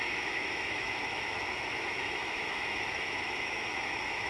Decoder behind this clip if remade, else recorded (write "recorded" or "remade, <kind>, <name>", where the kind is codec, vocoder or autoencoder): remade, autoencoder, DAC-VAE